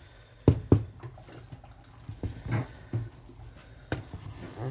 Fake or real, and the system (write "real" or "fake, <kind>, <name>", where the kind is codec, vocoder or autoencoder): real